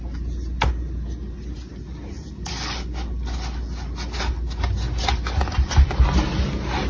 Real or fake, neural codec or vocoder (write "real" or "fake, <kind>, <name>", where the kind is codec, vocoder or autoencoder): real